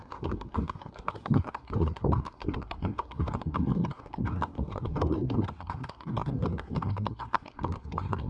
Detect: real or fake fake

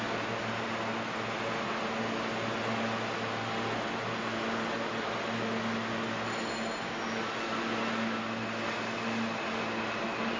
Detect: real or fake real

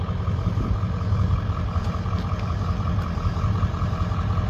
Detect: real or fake real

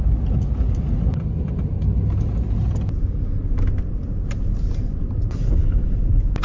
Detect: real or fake real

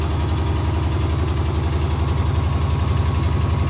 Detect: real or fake real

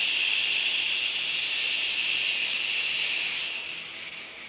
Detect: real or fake real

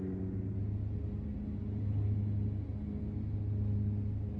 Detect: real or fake real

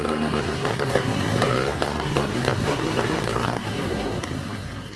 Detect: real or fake fake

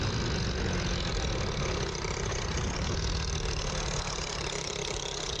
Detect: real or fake real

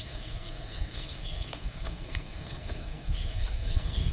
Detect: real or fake fake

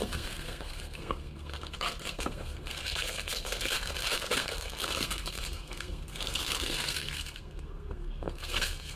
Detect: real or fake fake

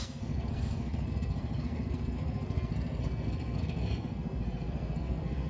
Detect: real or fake fake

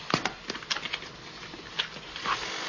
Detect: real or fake real